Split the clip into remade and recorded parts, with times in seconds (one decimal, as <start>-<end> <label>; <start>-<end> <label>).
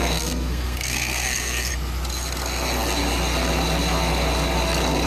0.0-1.7 remade; 1.7-5.1 recorded